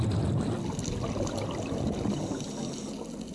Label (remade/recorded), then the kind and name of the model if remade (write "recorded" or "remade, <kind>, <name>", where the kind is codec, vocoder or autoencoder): recorded